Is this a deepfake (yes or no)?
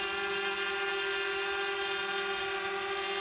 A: no